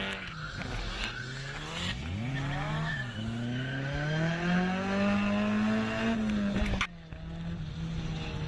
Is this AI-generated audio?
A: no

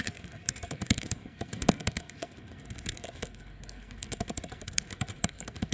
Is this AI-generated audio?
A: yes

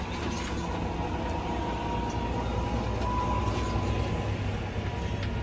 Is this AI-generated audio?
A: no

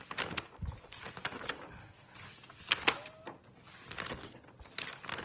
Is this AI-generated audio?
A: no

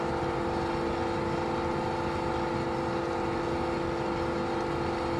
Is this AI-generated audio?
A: no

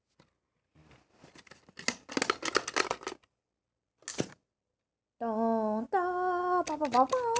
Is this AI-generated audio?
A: no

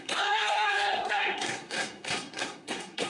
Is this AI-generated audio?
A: yes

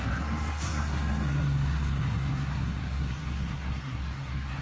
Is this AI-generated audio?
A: yes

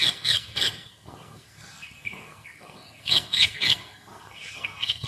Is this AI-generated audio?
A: yes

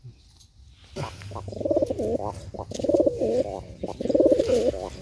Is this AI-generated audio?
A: no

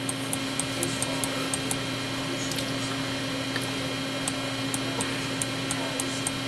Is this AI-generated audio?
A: no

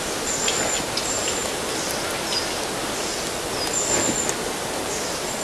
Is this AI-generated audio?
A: no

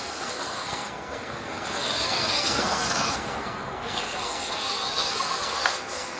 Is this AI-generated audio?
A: yes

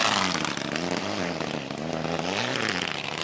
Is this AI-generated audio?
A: no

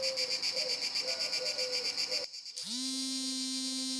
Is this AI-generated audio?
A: no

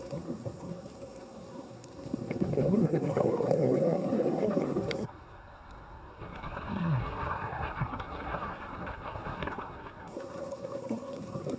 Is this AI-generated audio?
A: yes